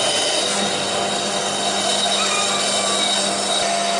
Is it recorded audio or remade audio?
recorded